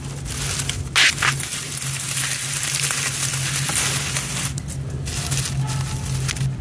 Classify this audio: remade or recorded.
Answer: recorded